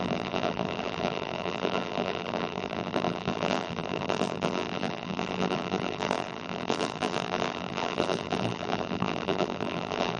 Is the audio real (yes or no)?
no